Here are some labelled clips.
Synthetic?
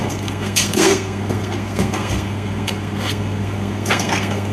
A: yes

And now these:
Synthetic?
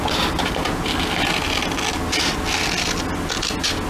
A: no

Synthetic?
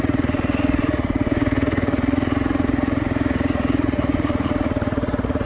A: yes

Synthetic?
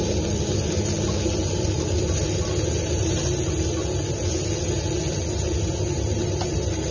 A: no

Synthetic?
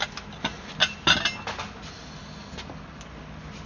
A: no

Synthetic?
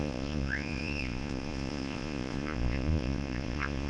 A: yes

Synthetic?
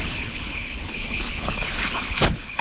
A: yes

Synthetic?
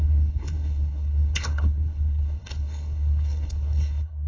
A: yes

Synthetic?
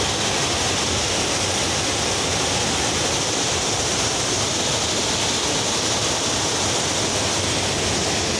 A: no